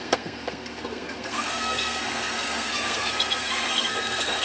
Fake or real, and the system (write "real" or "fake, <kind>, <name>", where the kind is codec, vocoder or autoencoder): fake, codec, SNAC